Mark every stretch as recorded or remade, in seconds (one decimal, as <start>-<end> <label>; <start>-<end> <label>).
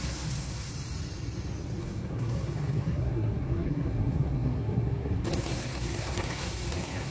0.0-0.7 remade; 0.7-1.8 recorded; 1.8-7.1 remade